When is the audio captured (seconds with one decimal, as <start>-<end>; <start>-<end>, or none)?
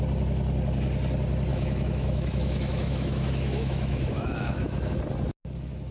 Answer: 0.0-1.5; 5.0-5.9